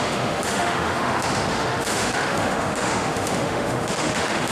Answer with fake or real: fake